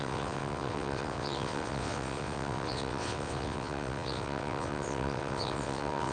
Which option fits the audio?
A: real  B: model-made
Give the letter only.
B